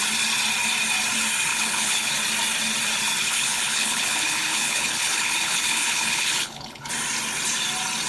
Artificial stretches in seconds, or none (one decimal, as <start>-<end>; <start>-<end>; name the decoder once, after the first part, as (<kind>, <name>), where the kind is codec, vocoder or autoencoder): 1.5-2.1 (codec, HILCodec); 3.2-6.9